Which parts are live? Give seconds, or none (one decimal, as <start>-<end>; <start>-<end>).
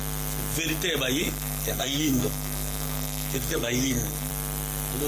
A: 0.0-1.2; 4.3-5.1